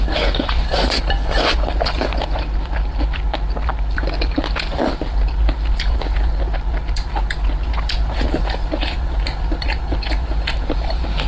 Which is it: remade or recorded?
recorded